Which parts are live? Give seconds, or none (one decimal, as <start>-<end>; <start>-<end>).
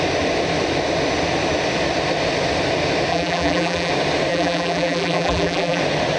0.0-3.1; 3.9-4.3; 5.8-6.2